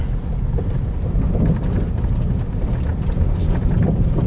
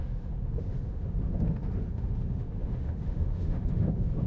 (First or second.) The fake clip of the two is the second